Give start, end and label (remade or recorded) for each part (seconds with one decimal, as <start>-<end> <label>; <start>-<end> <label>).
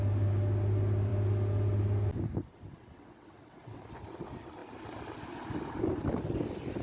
0.0-2.8 recorded; 2.8-3.8 remade; 3.8-6.8 recorded